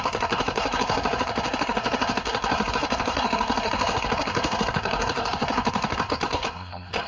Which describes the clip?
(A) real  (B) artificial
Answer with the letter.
B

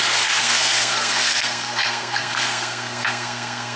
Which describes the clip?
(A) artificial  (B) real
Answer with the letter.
A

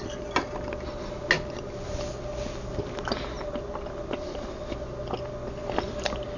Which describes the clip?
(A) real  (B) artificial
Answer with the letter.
A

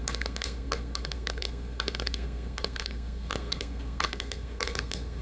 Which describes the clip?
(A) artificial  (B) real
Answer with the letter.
A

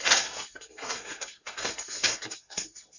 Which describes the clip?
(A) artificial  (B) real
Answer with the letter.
A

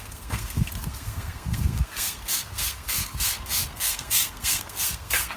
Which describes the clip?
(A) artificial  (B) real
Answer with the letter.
A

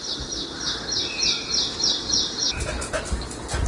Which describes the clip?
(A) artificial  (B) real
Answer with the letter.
B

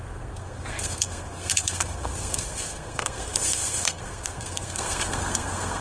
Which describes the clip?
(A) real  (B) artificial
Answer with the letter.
B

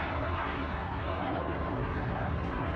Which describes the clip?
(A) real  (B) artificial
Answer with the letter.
B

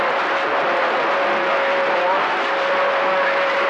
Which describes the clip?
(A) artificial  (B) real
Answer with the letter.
B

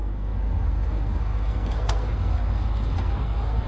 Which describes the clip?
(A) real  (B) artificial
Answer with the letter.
B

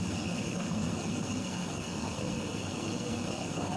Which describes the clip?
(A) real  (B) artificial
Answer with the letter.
B